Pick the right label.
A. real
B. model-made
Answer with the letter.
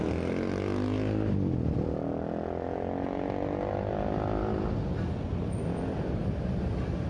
A